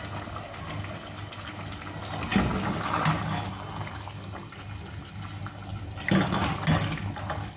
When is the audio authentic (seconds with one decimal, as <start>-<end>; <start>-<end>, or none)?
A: 0.0-7.6